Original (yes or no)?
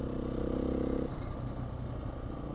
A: yes